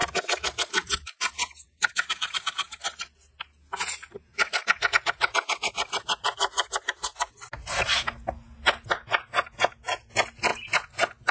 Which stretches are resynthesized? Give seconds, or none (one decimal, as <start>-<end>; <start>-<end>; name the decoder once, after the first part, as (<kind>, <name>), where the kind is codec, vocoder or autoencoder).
none